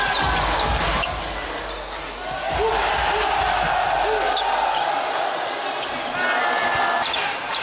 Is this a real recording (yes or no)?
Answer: yes